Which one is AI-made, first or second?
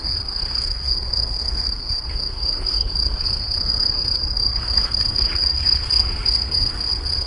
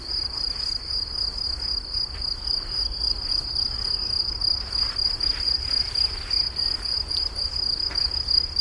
first